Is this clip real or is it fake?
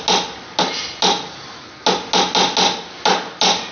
real